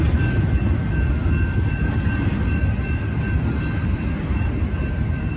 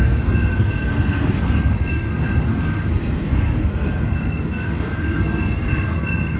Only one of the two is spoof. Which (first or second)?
second